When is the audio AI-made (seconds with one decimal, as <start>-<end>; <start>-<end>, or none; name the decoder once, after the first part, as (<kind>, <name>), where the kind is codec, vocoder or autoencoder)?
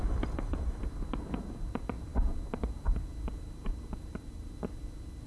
0.0-0.8 (vocoder, BigVGAN v2)